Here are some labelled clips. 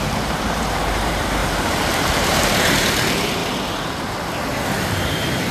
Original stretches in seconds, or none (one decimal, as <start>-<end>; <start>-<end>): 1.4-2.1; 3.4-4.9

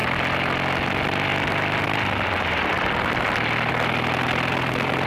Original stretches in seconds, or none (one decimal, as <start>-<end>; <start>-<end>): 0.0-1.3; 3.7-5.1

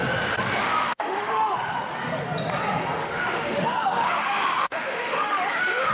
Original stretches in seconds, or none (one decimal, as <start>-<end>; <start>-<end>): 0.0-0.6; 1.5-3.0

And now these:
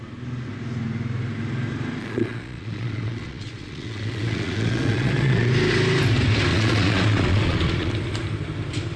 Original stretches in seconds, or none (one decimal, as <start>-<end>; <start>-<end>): 0.0-2.0; 5.5-6.5; 7.9-9.0